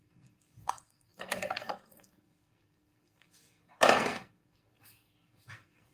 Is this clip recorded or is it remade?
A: remade